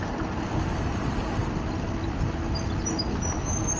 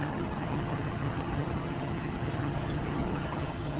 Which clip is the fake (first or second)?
second